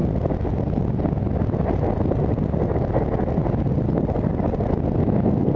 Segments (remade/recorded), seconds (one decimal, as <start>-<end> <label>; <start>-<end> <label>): 0.0-5.6 recorded